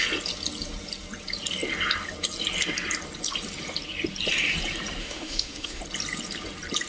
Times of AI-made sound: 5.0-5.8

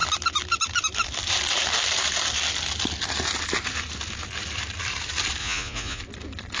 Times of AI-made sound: 5.4-6.0

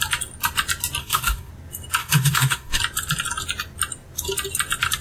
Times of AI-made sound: 1.0-1.5; 2.0-2.8